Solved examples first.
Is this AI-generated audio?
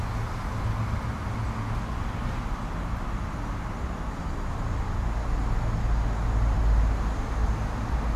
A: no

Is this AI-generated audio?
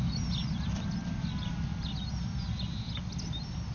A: no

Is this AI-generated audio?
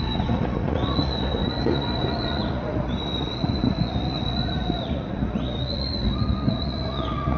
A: yes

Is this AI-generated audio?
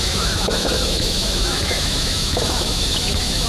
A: yes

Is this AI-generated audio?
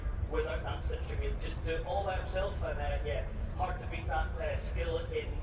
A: yes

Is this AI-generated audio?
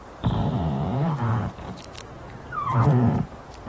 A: yes